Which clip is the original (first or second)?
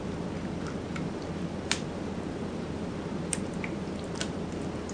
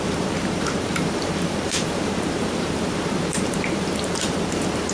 first